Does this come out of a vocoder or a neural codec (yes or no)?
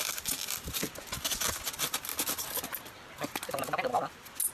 no